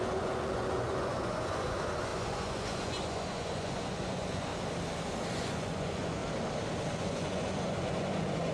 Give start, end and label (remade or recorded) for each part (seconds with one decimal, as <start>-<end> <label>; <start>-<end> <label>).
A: 0.0-4.5 remade; 4.5-5.3 recorded; 5.3-6.2 remade; 6.2-6.9 recorded; 6.9-8.5 remade